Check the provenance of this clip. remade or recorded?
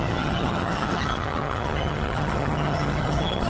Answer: remade